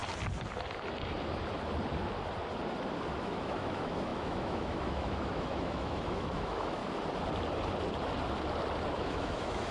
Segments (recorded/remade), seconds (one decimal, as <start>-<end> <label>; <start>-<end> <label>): 0.0-3.2 recorded; 3.2-6.8 remade; 6.8-8.9 recorded; 8.9-9.7 remade